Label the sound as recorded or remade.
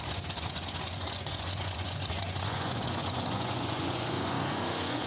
remade